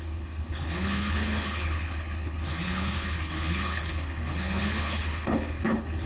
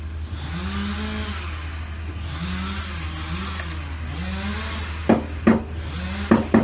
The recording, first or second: second